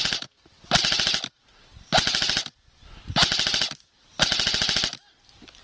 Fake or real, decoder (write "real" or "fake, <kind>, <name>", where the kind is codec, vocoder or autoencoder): real